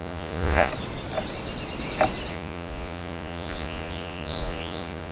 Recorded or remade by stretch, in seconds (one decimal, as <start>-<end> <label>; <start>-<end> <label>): 0.0-0.7 remade; 0.7-2.3 recorded; 2.3-5.1 remade